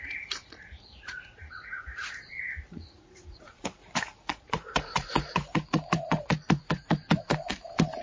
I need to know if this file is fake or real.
fake